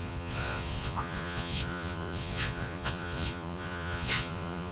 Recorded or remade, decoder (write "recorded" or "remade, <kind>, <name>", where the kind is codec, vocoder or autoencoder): remade, vocoder, Vocos